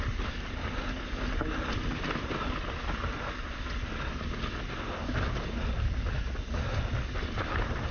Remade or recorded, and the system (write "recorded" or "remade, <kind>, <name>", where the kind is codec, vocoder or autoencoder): recorded